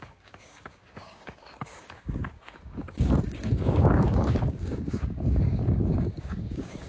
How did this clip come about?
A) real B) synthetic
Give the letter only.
B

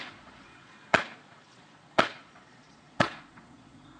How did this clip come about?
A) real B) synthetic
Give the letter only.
B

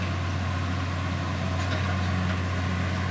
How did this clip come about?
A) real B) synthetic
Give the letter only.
A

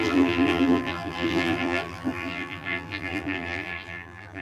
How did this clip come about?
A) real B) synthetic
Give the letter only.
B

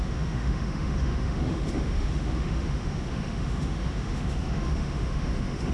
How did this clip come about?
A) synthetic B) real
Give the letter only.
A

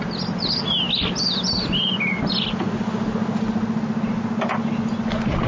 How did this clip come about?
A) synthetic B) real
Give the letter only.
B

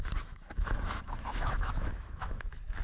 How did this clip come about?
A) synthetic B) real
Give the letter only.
A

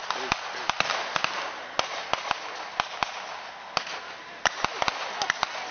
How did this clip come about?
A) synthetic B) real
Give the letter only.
B